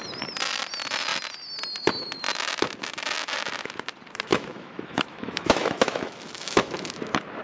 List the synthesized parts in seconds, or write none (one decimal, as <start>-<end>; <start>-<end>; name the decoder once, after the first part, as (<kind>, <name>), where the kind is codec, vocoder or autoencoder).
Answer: 4.3-6.9 (autoencoder, DAC-VAE)